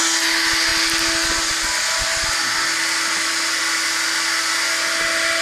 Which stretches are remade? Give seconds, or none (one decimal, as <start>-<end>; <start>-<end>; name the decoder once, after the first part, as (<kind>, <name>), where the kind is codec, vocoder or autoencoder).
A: none